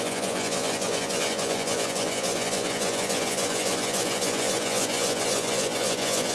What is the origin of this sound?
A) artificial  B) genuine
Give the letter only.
A